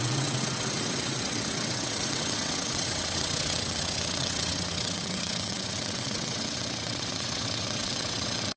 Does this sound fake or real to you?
fake